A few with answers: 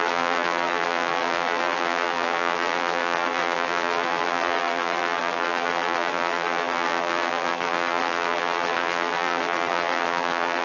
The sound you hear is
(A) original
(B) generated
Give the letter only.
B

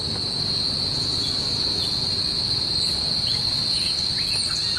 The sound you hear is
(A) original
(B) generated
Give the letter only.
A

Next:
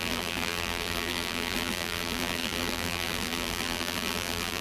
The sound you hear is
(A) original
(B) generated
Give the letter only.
B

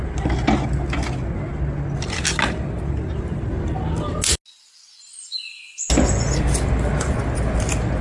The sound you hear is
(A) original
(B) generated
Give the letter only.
A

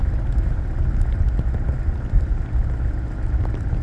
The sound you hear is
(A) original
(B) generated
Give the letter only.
A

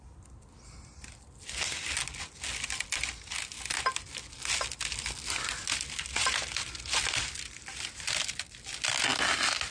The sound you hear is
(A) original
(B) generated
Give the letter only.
A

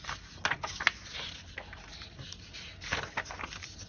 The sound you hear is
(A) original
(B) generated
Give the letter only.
A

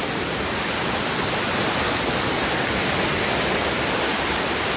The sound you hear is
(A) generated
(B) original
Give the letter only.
B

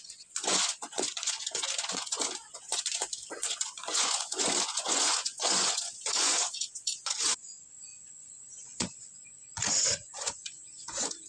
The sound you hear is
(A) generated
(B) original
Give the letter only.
A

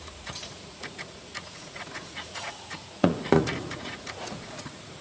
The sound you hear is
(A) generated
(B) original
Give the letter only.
A